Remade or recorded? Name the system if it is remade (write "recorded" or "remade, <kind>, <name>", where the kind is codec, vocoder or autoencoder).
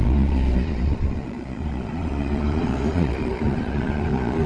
remade, vocoder, Vocos